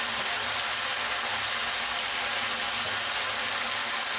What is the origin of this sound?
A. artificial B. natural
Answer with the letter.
B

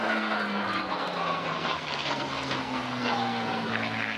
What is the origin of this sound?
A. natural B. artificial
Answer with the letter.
B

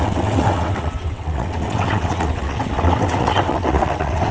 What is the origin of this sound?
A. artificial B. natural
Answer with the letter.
A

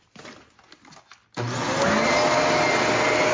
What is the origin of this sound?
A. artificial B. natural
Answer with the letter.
B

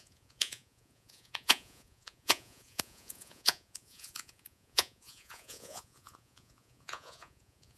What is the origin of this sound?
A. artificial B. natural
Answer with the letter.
A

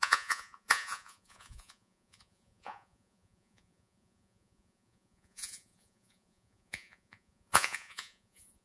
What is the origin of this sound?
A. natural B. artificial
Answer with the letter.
B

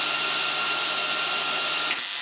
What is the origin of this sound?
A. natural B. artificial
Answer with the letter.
A